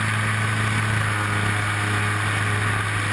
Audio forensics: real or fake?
real